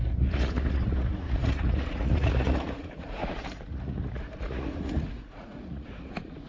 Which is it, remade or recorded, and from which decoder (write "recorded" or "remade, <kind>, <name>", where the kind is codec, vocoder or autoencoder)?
remade, vocoder, Vocos